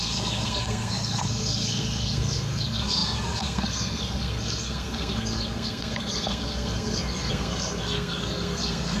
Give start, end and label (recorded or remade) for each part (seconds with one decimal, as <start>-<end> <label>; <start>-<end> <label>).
0.0-9.0 remade